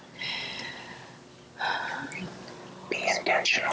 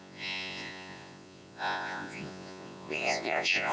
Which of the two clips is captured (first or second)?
first